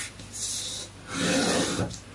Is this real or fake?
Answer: real